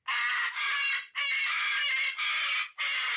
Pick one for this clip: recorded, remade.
recorded